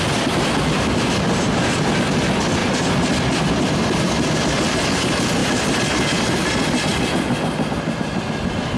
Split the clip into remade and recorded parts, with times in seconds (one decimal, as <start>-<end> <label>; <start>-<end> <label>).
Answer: 0.0-2.6 recorded; 2.6-4.4 remade; 4.4-5.4 recorded; 5.4-6.4 remade; 6.4-6.9 recorded; 6.9-7.7 remade; 7.7-8.8 recorded

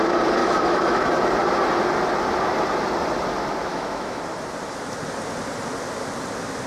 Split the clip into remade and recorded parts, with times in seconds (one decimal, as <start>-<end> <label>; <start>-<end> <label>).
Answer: 0.0-0.4 recorded; 0.4-1.2 remade; 1.2-3.7 recorded; 3.7-4.2 remade; 4.2-6.7 recorded

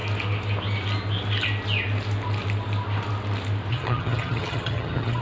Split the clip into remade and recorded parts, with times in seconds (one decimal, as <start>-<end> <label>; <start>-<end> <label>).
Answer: 0.0-3.7 recorded; 3.7-5.2 remade

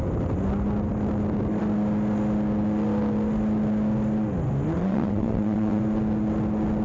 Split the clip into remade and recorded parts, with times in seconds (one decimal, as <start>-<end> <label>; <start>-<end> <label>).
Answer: 0.0-4.8 recorded; 4.8-5.8 remade; 5.8-6.8 recorded

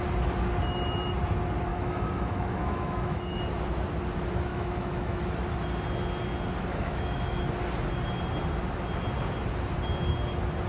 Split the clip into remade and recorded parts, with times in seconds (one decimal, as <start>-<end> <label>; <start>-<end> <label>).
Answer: 0.0-1.7 recorded; 1.7-3.4 remade; 3.4-4.5 recorded; 4.5-5.2 remade; 5.2-6.7 recorded; 6.7-7.4 remade; 7.4-10.7 recorded

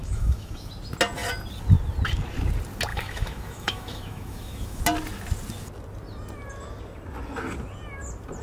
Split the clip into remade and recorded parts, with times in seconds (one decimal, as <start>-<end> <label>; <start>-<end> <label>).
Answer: 0.0-0.7 remade; 0.7-2.9 recorded; 2.9-4.8 remade; 4.8-8.4 recorded

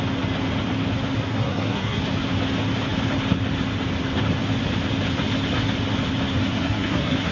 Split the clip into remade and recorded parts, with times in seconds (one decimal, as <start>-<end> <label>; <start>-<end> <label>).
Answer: 0.0-1.3 recorded; 1.3-2.0 remade; 2.0-6.4 recorded; 6.4-7.3 remade

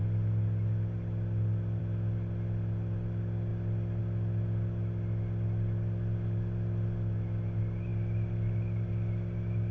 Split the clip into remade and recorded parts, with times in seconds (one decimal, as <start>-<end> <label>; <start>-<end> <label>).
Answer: 0.0-9.7 recorded